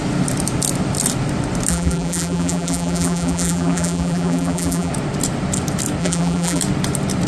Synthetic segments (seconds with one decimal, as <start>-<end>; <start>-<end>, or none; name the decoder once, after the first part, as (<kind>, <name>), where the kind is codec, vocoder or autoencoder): 1.7-4.9 (vocoder, BigVGAN v2); 6.0-6.6